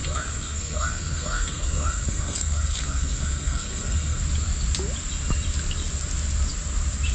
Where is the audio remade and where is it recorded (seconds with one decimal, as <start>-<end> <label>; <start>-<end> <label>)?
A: 0.0-4.2 remade; 4.2-7.1 recorded